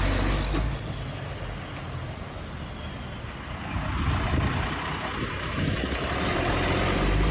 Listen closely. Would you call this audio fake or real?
real